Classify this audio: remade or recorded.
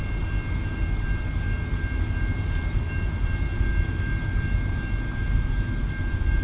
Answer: recorded